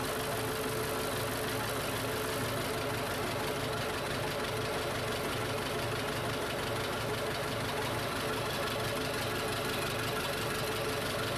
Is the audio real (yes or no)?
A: yes